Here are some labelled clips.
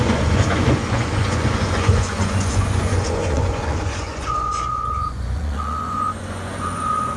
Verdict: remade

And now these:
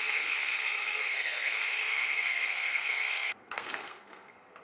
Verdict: remade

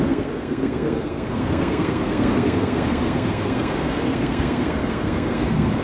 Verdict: remade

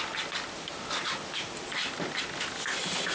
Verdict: recorded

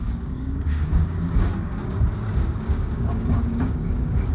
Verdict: remade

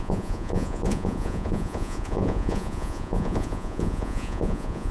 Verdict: remade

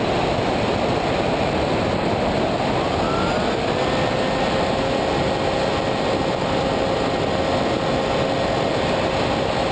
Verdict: recorded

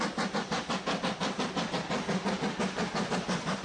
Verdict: recorded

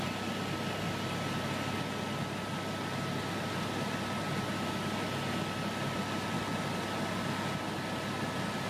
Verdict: recorded